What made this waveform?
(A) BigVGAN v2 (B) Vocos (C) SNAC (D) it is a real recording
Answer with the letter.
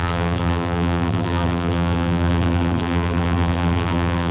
A